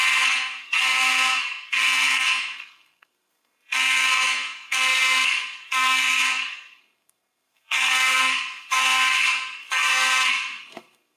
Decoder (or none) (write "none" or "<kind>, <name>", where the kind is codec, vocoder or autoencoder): codec, SNAC